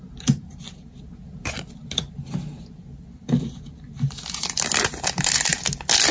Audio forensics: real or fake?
real